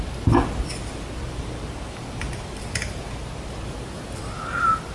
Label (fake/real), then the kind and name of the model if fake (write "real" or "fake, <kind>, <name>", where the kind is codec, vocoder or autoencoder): real